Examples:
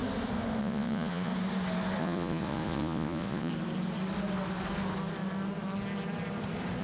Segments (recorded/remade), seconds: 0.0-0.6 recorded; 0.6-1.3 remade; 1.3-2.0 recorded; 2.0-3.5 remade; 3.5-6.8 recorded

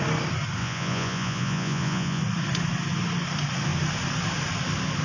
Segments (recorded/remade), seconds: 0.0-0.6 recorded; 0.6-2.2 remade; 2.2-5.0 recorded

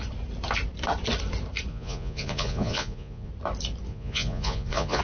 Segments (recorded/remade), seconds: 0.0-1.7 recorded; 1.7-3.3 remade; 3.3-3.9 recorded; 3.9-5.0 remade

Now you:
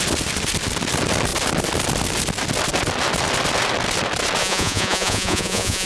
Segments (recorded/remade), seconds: 0.0-4.4 recorded; 4.4-5.9 remade

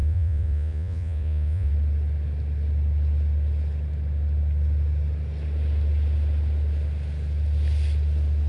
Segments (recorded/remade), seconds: 0.0-1.7 remade; 1.7-8.5 recorded